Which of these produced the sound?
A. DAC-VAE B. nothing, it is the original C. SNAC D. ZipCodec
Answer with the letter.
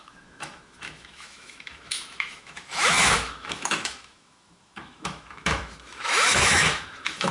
A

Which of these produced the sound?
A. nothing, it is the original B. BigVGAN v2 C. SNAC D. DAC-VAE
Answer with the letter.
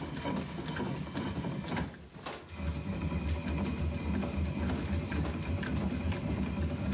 A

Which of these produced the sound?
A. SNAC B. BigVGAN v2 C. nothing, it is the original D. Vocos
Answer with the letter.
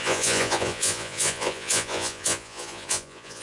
D